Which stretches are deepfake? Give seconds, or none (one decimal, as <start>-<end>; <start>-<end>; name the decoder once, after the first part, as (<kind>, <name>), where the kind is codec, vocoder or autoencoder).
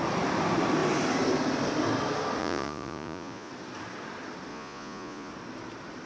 2.4-3.5 (vocoder, Vocos); 4.5-5.3